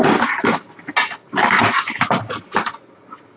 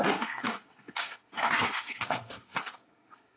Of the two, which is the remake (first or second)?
second